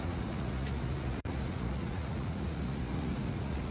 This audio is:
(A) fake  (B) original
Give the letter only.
A